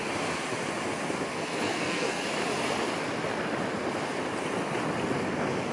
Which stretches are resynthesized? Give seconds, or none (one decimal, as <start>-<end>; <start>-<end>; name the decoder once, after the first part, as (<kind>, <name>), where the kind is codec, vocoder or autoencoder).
1.3-2.2 (codec, SNAC)